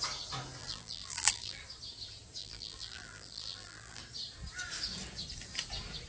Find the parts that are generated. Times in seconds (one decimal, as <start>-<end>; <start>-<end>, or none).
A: 0.6-1.6; 2.4-4.0